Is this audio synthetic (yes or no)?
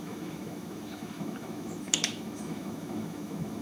yes